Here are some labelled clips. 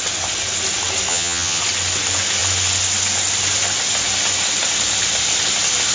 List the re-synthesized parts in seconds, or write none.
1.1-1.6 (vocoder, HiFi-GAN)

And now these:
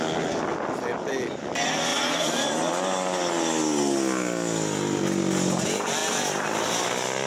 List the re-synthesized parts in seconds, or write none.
1.9-2.6 (vocoder, BigVGAN v2); 6.0-7.3

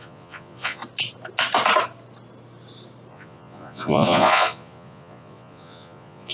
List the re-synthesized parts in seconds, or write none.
0.0-0.8 (vocoder, Vocos); 3.1-6.3

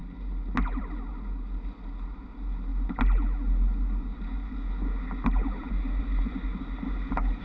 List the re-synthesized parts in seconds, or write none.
none

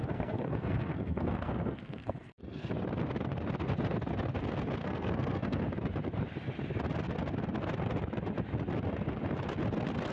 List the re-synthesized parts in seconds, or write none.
0.0-2.7 (codec, SNAC); 4.8-5.6

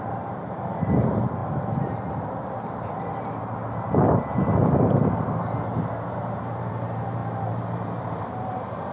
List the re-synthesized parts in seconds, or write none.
0.0-1.4 (vocoder, BigVGAN v2); 6.1-8.9

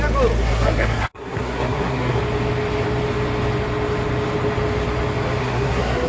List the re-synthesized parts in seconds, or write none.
0.4-2.2 (codec, SNAC); 5.4-6.1

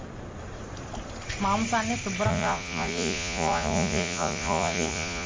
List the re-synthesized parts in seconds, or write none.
2.3-5.3 (vocoder, Vocos)